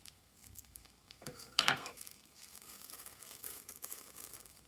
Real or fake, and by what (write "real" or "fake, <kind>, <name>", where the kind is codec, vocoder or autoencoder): fake, codec, SNAC